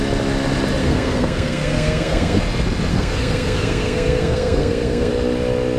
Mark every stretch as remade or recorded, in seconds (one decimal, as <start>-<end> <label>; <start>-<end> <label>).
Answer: 0.0-0.8 recorded; 0.8-2.4 remade; 2.4-2.9 recorded; 2.9-5.1 remade; 5.1-5.8 recorded

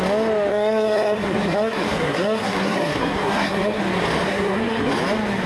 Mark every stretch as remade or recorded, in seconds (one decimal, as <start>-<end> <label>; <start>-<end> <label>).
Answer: 0.0-0.5 recorded; 0.5-3.8 remade; 3.8-4.3 recorded; 4.3-4.9 remade; 4.9-5.5 recorded

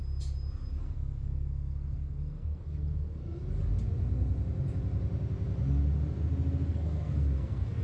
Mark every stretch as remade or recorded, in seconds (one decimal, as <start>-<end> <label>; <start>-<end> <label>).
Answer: 0.0-0.8 recorded; 0.8-3.4 remade; 3.4-6.7 recorded; 6.7-7.8 remade

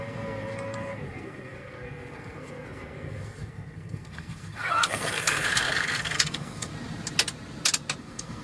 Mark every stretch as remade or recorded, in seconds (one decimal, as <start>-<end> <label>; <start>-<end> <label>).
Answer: 0.0-6.7 remade; 6.7-8.0 recorded; 8.0-8.4 remade